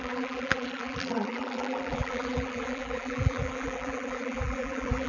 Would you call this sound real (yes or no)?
no